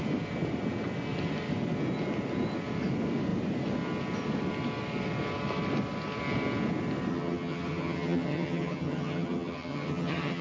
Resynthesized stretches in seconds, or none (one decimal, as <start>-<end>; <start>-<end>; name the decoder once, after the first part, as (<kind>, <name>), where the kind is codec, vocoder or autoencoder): 7.1-10.4 (vocoder, HiFi-GAN)